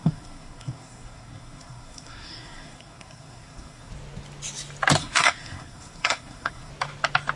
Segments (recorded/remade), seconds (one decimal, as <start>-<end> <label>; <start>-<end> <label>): 0.0-3.9 remade; 3.9-5.0 recorded; 5.0-6.7 remade; 6.7-7.4 recorded